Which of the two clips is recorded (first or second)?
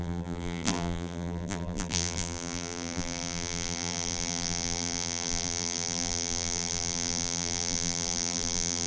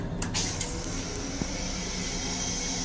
second